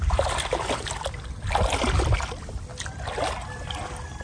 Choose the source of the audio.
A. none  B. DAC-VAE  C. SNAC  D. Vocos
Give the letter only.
A